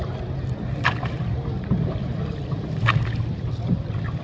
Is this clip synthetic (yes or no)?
yes